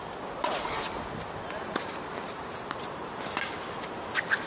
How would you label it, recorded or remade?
recorded